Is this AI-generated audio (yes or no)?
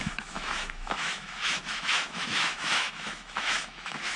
yes